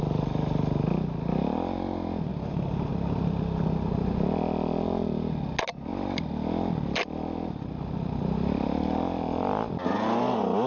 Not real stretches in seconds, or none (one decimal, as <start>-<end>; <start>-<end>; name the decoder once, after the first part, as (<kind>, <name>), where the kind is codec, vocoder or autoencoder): 2.3-2.9 (vocoder, BigVGAN v2); 5.9-9.7